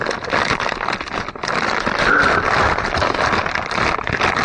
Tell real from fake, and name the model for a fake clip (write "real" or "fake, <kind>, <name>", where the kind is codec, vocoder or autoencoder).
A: real